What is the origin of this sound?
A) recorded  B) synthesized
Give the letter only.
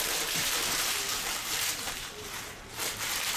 B